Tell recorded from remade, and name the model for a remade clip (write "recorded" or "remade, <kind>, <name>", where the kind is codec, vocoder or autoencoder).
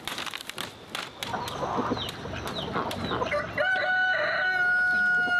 recorded